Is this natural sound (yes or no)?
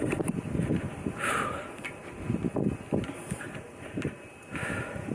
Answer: yes